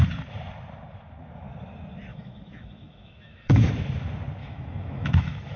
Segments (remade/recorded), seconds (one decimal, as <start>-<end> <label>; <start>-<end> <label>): 0.0-2.1 recorded; 2.1-3.7 remade; 3.7-4.4 recorded; 4.4-5.6 remade